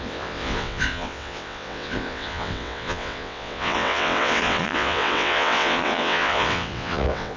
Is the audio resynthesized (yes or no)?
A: yes